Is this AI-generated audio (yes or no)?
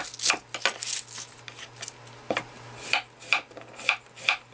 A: no